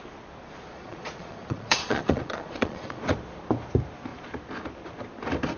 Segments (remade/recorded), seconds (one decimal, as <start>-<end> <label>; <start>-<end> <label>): 0.0-0.7 recorded; 0.7-3.0 remade; 3.0-5.6 recorded